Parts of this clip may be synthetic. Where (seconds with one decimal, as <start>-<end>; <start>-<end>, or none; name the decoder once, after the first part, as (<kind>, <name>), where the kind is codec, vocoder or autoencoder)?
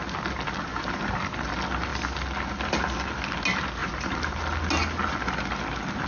0.7-1.2 (vocoder, BigVGAN v2); 3.8-4.4